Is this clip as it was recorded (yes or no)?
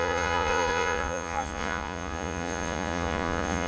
no